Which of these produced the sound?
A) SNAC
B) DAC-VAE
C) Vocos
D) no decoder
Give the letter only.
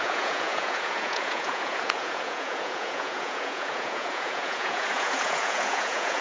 C